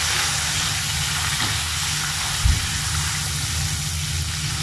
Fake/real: real